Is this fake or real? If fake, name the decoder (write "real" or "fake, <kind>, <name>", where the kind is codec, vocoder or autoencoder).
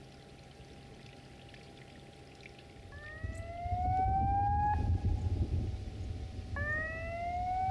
real